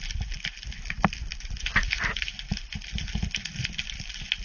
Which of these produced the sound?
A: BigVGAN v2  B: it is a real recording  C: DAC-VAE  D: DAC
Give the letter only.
B